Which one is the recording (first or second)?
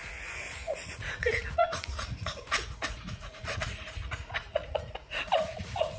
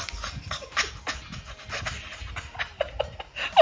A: second